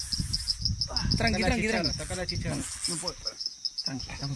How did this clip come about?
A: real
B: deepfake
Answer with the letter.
A